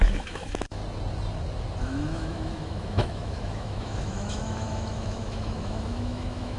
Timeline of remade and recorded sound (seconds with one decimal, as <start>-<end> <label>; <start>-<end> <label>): 0.0-0.8 remade; 0.8-1.8 recorded; 1.8-6.6 remade